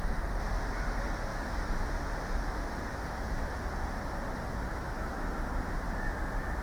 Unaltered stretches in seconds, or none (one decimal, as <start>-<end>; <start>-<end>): 0.0-1.3; 1.8-2.9; 3.6-4.7; 5.3-6.6